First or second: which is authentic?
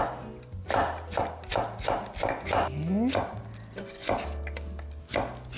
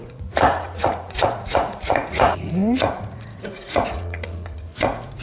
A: first